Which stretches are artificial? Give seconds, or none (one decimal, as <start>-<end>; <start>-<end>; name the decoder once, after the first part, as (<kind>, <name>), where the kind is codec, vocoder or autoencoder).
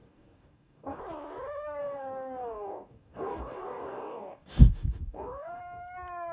0.0-1.0 (codec, DAC); 1.8-5.6